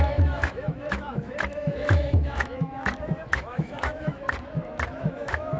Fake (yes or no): yes